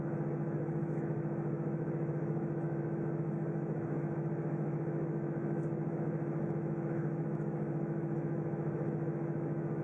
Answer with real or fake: fake